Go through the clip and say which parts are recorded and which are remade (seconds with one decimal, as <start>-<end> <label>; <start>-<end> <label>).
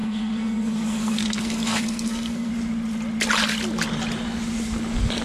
0.0-2.5 remade; 2.5-5.2 recorded